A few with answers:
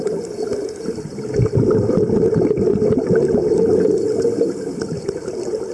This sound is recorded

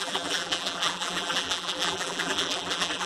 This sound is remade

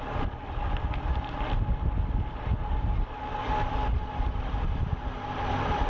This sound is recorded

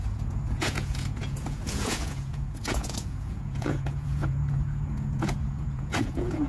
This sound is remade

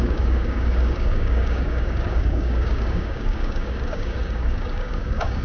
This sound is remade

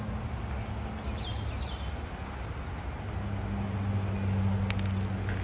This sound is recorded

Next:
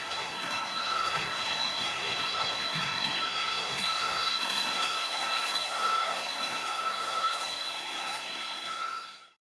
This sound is remade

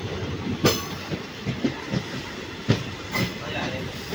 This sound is recorded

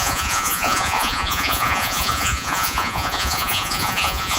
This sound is remade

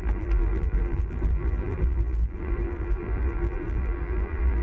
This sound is remade